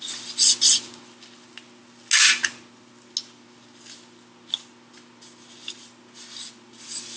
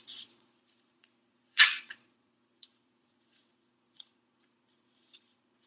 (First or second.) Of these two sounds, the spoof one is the second